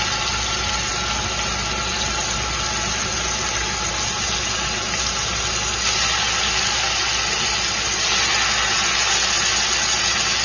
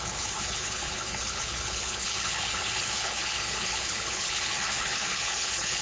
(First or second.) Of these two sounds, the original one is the first